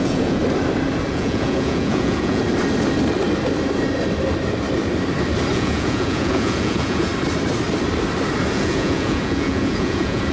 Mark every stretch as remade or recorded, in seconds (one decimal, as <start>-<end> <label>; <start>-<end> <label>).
0.0-0.4 remade; 0.4-1.1 recorded; 1.1-2.4 remade; 2.4-5.5 recorded; 5.5-7.1 remade; 7.1-8.5 recorded; 8.5-10.3 remade